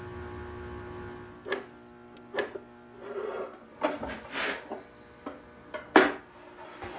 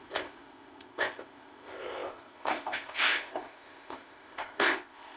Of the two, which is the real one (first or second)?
first